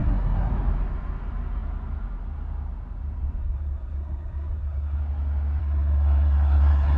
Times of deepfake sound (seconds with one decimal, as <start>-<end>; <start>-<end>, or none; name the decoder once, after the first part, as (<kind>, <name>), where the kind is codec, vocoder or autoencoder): 0.0-0.5 (codec, SNAC); 3.4-5.0; 5.6-7.0